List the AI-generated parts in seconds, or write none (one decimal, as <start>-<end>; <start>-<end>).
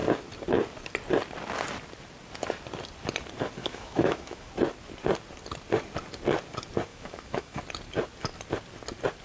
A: 3.6-4.5; 6.9-7.6